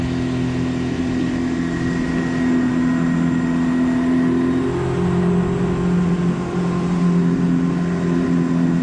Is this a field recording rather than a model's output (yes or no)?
yes